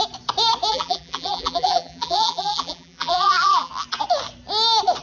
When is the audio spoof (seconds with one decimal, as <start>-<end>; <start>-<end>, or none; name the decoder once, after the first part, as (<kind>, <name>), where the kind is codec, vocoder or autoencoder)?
0.7-3.7 (vocoder, BigVGAN v2)